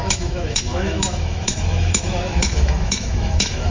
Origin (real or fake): fake